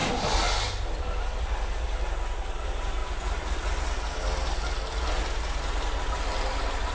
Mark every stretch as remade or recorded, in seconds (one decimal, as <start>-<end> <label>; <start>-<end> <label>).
0.0-6.9 recorded